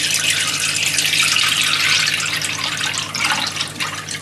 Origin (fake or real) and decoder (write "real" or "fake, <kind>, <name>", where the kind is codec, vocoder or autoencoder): real